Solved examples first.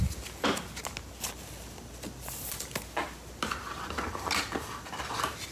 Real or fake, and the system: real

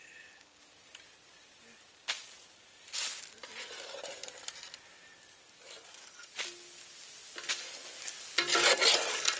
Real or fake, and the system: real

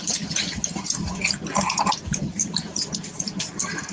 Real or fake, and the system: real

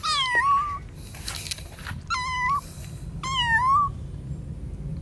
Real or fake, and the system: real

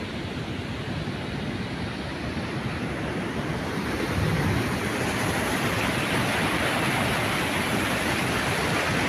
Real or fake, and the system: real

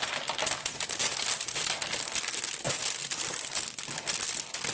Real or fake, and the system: real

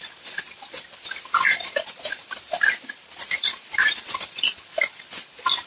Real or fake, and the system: fake, vocoder, BigVGAN v2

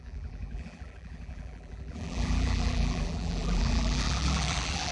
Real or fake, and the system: fake, vocoder, BigVGAN v2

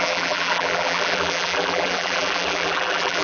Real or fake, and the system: fake, vocoder, BigVGAN v2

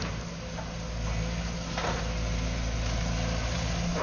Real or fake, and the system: real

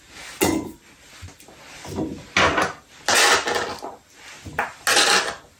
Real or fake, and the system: real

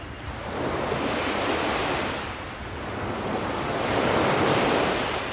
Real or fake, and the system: real